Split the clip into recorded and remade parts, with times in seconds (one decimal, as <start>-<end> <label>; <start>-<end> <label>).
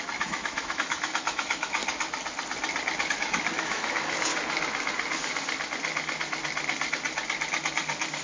0.0-1.8 remade; 1.8-3.1 recorded; 3.1-4.3 remade; 4.3-8.2 recorded